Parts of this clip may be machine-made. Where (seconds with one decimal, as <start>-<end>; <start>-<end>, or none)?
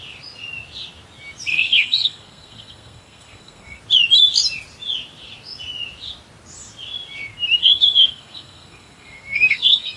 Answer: 1.5-3.8; 7.6-10.0